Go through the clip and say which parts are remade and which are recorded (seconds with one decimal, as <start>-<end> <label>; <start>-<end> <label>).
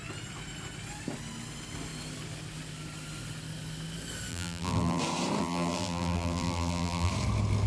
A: 0.0-4.3 recorded; 4.3-5.0 remade; 5.0-5.4 recorded; 5.4-7.1 remade; 7.1-7.7 recorded